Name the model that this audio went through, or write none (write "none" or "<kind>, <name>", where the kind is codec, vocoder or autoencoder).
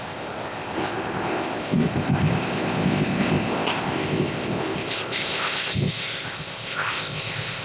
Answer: codec, ZipCodec